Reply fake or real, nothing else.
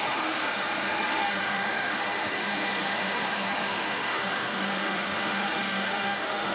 fake